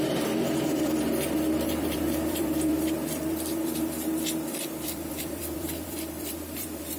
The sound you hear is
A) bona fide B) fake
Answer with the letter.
B